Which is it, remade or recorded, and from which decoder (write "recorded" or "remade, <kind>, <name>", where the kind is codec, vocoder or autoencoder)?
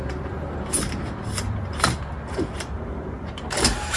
remade, vocoder, BigVGAN v2